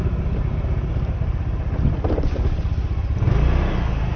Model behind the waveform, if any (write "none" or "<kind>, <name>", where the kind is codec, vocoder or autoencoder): none